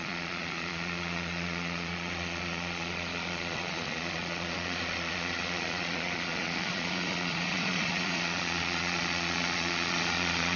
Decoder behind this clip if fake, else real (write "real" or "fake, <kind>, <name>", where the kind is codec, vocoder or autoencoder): fake, vocoder, Vocos